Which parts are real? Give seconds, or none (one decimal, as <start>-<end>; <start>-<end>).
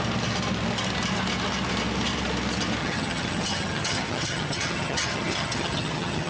0.0-2.8